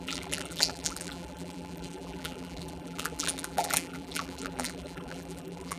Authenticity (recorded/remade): remade